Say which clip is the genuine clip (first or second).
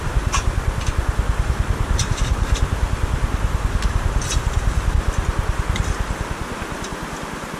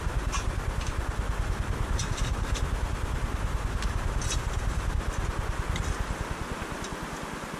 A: second